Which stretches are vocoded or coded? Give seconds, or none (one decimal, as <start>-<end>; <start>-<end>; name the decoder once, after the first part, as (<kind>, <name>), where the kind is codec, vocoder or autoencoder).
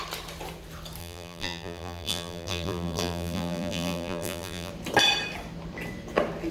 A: 1.0-4.7 (vocoder, BigVGAN v2)